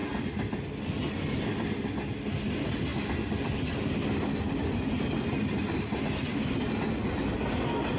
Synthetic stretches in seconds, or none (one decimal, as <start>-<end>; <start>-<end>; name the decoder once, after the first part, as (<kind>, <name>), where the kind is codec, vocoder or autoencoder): none